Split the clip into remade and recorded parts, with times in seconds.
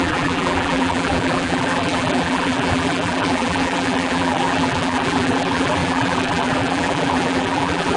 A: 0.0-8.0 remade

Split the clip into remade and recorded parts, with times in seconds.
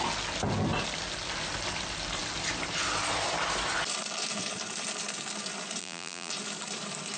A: 0.0-5.8 recorded; 5.8-6.3 remade; 6.3-7.2 recorded